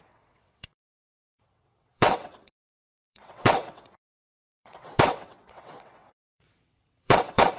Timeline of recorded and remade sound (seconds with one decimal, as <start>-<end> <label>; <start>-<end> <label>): 0.0-7.6 remade